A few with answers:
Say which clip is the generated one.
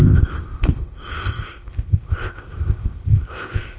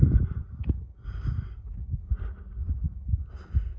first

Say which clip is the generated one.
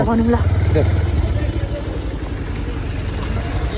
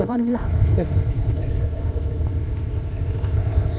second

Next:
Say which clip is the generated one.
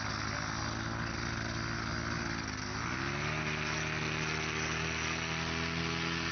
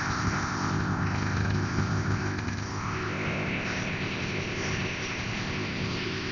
second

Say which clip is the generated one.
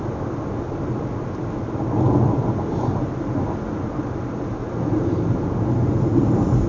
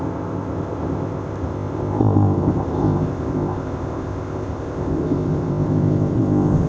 second